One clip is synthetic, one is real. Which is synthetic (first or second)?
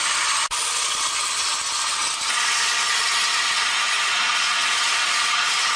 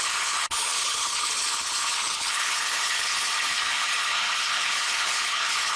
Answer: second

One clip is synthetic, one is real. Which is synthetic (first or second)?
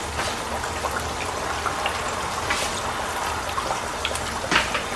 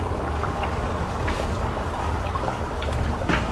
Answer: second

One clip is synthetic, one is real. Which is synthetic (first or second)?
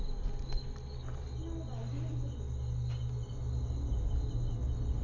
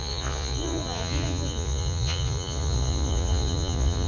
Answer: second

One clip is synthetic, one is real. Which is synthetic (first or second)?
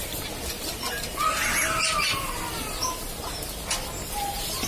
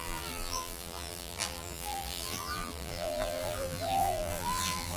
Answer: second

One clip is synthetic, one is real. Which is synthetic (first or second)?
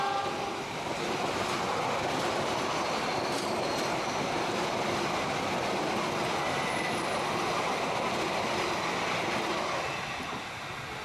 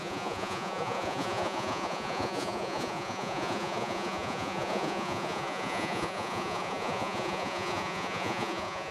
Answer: second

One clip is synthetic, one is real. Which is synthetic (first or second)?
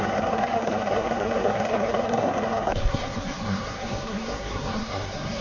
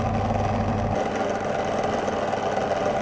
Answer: first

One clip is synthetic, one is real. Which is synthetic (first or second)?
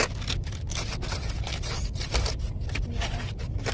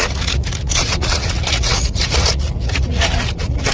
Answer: second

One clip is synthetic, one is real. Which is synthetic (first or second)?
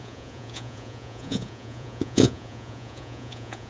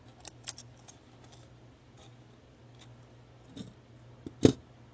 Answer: first